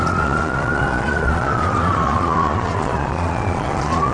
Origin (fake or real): fake